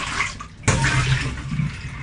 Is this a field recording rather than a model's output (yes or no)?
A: yes